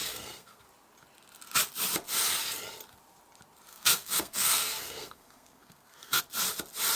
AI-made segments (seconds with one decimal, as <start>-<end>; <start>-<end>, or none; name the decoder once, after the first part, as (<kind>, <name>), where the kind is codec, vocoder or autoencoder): 0.0-0.6 (codec, SNAC); 3.7-6.2